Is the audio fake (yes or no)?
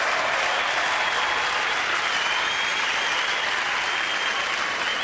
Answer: no